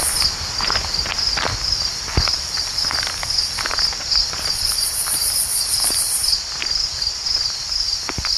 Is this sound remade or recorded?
remade